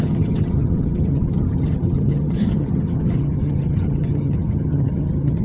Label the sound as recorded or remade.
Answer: remade